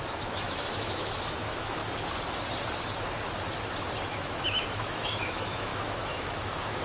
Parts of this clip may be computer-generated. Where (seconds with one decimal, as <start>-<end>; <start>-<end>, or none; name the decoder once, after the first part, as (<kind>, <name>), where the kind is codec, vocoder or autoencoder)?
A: 0.0-1.8 (autoencoder, DAC-VAE); 4.1-6.8